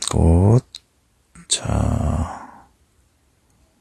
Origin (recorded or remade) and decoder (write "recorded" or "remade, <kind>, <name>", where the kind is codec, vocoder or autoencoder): recorded